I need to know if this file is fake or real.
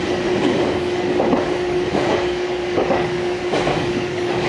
fake